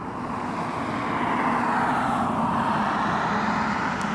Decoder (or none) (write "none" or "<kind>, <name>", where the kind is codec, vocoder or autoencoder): none